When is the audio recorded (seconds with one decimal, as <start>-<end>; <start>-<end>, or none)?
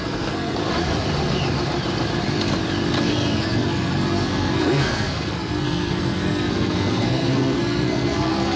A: 0.6-3.0